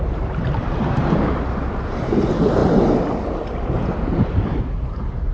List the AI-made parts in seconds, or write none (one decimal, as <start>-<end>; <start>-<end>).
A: 0.0-2.6; 3.7-5.3